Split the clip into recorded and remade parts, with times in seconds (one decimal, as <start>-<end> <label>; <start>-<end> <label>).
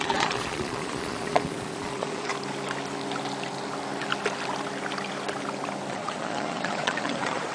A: 0.0-2.3 remade; 2.3-5.9 recorded; 5.9-7.5 remade